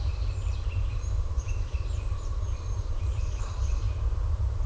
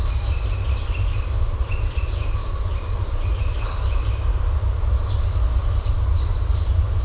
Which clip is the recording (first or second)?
second